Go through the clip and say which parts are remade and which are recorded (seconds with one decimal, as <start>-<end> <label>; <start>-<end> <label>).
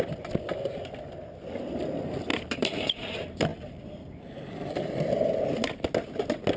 0.0-2.3 recorded; 2.3-3.1 remade; 3.1-3.5 recorded; 3.5-5.4 remade; 5.4-6.6 recorded